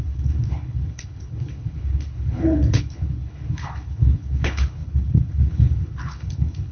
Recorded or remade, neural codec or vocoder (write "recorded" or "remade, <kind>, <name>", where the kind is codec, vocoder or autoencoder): remade, codec, HILCodec